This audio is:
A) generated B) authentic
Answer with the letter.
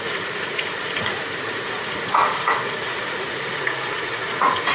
A